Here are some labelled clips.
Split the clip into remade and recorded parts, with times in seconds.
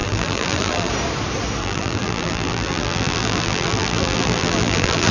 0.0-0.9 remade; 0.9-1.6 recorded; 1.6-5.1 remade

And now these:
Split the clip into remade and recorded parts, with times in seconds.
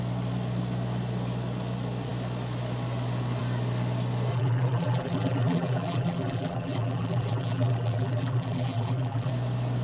0.0-4.3 recorded; 4.3-9.3 remade; 9.3-9.8 recorded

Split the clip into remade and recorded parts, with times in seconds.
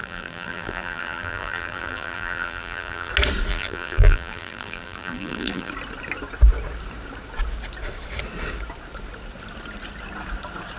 0.0-3.1 remade; 3.1-3.5 recorded; 3.5-5.7 remade; 5.7-10.8 recorded